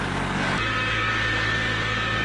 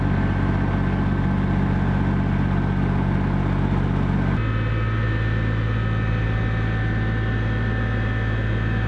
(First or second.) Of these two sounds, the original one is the second